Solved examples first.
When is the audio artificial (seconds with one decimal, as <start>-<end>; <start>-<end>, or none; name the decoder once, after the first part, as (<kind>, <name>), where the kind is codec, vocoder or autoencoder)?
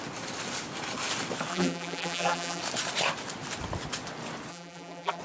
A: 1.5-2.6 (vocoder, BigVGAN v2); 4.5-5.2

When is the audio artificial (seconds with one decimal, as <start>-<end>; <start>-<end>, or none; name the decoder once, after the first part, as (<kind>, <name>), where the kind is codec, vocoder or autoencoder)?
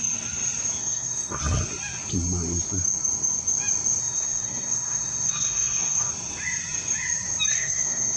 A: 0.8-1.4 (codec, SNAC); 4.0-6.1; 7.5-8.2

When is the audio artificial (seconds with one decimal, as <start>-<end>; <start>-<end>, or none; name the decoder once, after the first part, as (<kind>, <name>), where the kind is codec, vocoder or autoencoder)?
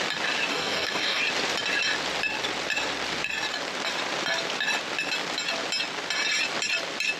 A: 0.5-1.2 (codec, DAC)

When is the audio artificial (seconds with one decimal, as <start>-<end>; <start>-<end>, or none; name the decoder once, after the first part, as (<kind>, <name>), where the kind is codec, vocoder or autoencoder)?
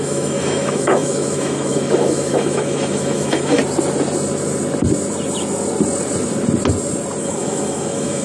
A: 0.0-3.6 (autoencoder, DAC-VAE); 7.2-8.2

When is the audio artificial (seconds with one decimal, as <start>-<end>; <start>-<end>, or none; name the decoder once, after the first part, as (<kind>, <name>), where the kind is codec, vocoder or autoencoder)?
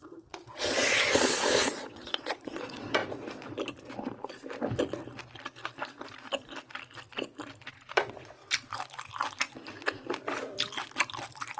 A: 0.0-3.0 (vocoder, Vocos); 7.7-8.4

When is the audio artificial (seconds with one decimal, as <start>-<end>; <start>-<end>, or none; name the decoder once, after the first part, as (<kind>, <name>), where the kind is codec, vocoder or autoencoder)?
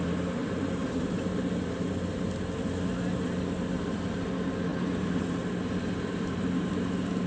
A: 0.4-1.9 (vocoder, BigVGAN v2); 4.7-6.7